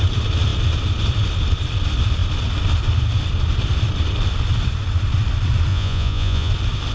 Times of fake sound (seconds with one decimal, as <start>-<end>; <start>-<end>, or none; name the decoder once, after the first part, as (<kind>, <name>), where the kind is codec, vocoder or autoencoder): 5.7-6.5 (vocoder, Vocos)